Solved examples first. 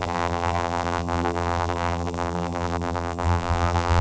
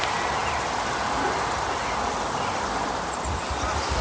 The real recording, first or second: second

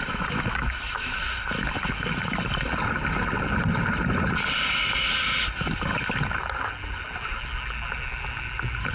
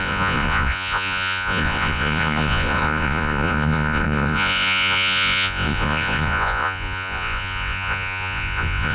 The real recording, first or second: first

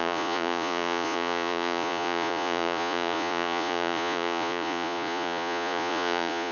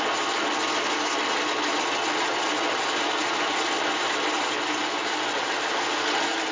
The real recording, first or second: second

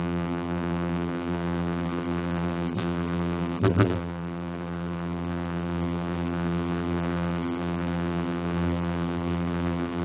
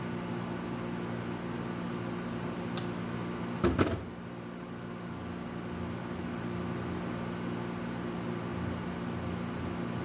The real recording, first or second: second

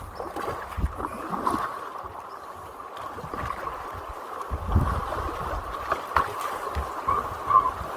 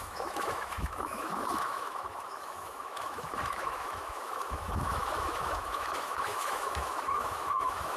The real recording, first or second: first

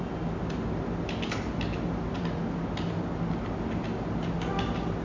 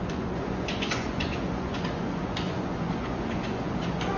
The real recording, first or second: first